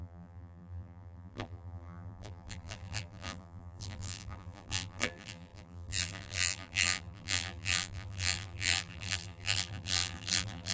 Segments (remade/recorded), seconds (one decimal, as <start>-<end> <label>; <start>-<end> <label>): 0.0-10.7 remade

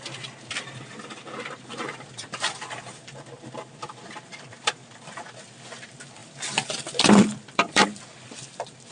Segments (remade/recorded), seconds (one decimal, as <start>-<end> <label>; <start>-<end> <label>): 0.0-8.9 remade

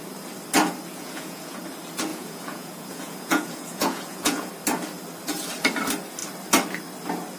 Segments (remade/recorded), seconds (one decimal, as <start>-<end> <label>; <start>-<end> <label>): 0.0-0.9 recorded; 0.9-1.6 remade; 1.6-2.1 recorded; 2.1-4.5 remade; 4.5-7.4 recorded

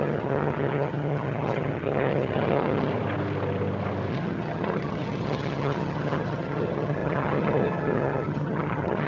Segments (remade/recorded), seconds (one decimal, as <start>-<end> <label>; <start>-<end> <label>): 0.0-2.9 remade; 2.9-4.1 recorded; 4.1-9.1 remade

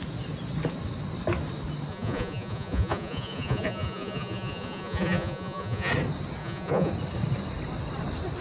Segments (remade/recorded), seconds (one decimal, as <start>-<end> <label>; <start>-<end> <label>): 0.0-1.9 recorded; 1.9-5.9 remade; 5.9-6.4 recorded; 6.4-6.9 remade; 6.9-8.4 recorded

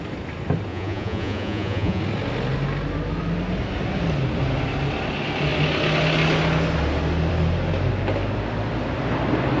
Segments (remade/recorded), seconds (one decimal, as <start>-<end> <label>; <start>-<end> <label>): 0.0-0.7 recorded; 0.7-2.0 remade; 2.0-9.6 recorded

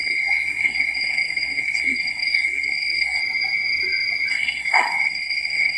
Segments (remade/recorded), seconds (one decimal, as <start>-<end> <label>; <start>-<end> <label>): 0.0-3.2 remade; 3.2-4.3 recorded; 4.3-5.8 remade